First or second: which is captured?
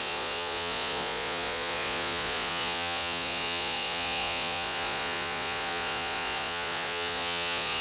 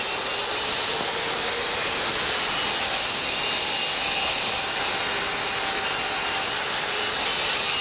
second